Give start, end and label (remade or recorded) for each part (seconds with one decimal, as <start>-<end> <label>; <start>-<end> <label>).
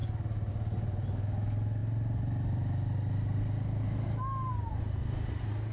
0.0-5.7 recorded